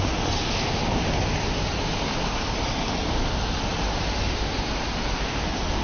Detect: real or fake real